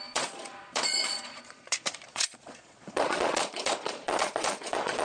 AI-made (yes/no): yes